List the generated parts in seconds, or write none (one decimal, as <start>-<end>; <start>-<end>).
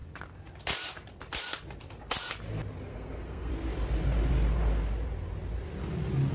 2.9-3.5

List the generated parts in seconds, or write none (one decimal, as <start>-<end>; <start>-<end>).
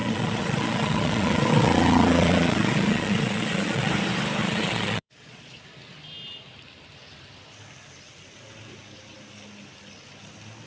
0.0-3.9; 4.4-5.6